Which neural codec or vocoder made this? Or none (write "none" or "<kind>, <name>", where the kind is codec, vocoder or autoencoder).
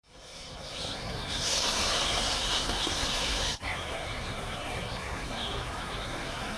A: codec, SNAC